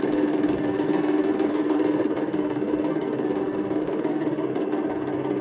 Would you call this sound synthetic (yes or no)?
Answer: yes